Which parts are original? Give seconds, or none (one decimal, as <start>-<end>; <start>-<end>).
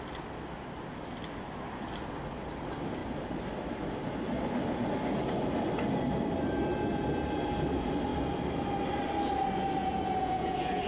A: 0.0-9.8